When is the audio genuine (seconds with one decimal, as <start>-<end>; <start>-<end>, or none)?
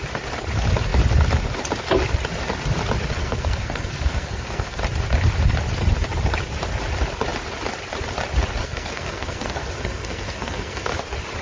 0.0-3.2; 4.8-8.6; 10.9-11.4